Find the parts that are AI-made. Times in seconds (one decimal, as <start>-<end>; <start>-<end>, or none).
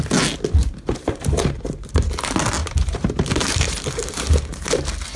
0.6-1.9; 2.6-4.7